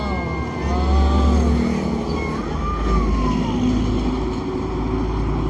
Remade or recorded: recorded